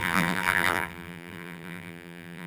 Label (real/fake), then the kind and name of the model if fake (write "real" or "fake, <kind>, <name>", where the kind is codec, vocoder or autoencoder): fake, vocoder, BigVGAN v2